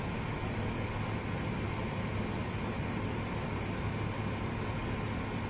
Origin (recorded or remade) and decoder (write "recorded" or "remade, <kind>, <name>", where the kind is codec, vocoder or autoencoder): recorded